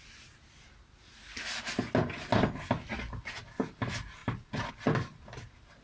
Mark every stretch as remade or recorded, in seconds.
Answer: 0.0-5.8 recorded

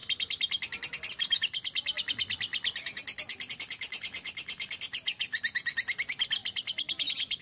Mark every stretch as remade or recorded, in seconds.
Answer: 0.0-7.4 recorded

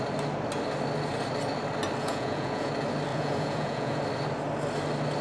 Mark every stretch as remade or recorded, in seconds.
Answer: 0.0-2.0 recorded; 2.0-2.7 remade; 2.7-3.1 recorded; 3.1-4.0 remade; 4.0-5.2 recorded

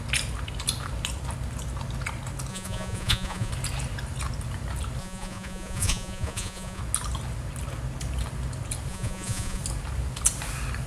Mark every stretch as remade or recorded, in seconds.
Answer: 0.0-2.5 recorded; 2.5-3.5 remade; 3.5-5.0 recorded; 5.0-6.8 remade; 6.8-8.9 recorded; 8.9-9.6 remade; 9.6-10.9 recorded

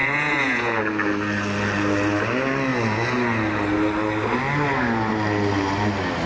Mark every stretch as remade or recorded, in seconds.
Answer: 0.0-0.8 remade; 0.8-6.3 recorded

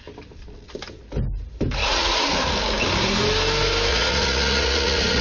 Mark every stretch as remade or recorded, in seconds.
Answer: 0.0-1.8 recorded; 1.8-2.5 remade; 2.5-3.9 recorded; 3.9-5.2 remade

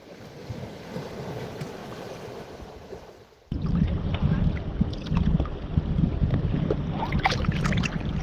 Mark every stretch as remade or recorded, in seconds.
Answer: 0.0-8.2 recorded

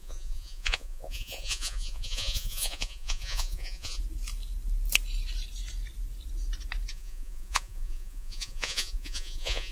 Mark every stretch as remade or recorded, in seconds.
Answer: 0.0-4.0 remade; 4.0-6.9 recorded; 6.9-9.7 remade